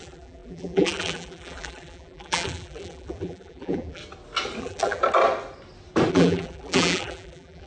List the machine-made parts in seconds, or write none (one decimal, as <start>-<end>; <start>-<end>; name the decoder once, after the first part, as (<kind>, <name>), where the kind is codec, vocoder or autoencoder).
0.0-4.0 (vocoder, BigVGAN v2); 4.6-5.0; 6.1-7.7